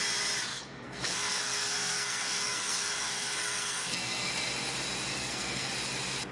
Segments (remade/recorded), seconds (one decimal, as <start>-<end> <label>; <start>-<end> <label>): 0.0-0.5 recorded; 0.5-4.3 remade; 4.3-5.1 recorded; 5.1-5.7 remade; 5.7-6.3 recorded